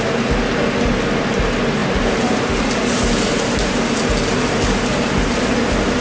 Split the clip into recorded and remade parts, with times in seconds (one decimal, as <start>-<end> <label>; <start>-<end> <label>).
0.0-1.8 recorded; 1.8-3.7 remade; 3.7-6.0 recorded